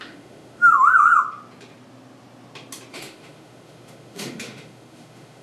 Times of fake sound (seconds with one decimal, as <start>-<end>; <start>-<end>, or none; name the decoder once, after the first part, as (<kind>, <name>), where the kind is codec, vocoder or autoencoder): 0.0-0.7 (autoencoder, DAC-VAE); 2.9-5.4